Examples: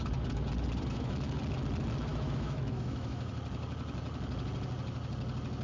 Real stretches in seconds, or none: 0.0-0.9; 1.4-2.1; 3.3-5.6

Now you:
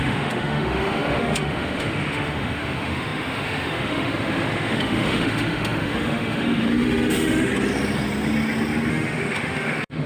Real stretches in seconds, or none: 7.5-8.9